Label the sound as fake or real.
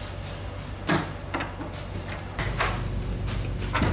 real